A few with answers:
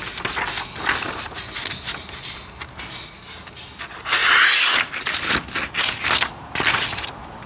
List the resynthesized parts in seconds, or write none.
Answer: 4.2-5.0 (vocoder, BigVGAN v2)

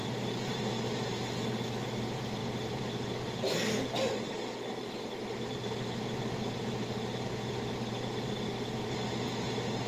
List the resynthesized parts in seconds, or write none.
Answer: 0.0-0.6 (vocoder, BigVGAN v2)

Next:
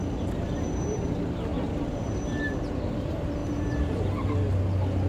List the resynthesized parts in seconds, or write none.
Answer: 1.5-2.1 (vocoder, BigVGAN v2)